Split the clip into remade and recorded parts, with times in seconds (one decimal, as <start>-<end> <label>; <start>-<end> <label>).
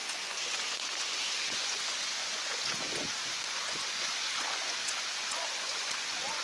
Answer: 0.0-6.4 remade